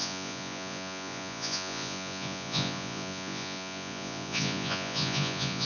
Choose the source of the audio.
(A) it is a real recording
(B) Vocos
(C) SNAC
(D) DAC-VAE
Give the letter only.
B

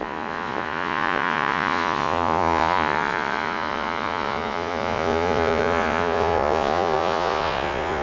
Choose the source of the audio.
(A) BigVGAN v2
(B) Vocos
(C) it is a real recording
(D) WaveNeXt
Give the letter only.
B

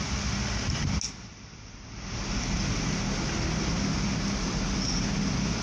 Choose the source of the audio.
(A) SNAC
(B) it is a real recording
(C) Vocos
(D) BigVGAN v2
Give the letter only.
B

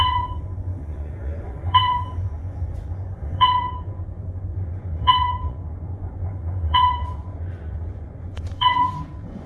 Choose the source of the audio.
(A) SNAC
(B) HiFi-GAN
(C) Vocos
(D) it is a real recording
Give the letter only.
C